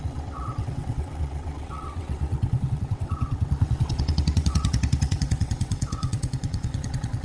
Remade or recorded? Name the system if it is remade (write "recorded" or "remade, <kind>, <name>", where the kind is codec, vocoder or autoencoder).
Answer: remade, vocoder, WaveNeXt